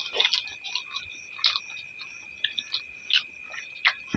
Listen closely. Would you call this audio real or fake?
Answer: real